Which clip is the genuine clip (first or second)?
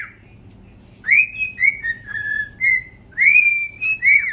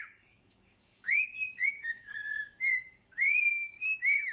first